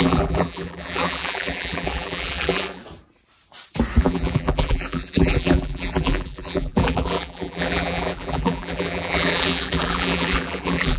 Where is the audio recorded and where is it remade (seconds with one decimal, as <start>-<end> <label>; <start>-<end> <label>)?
0.0-2.8 remade; 2.8-4.0 recorded; 4.0-11.0 remade